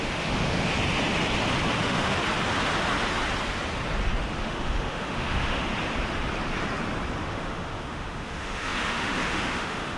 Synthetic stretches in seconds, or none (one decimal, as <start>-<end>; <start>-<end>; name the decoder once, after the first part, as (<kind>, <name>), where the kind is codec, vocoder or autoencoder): 0.0-0.7 (autoencoder, DAC-VAE); 1.8-2.2; 4.4-5.7; 7.2-10.0